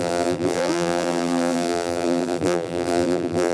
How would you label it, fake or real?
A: fake